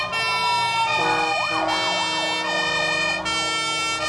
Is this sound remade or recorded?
recorded